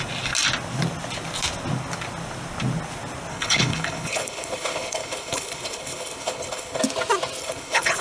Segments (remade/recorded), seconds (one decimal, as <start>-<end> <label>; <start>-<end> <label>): 0.0-3.3 recorded; 3.3-6.8 remade; 6.8-7.4 recorded; 7.4-8.0 remade